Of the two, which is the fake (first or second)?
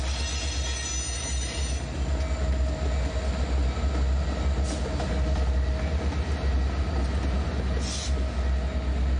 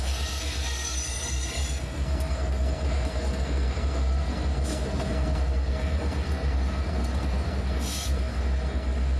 second